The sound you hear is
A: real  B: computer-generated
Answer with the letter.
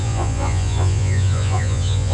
B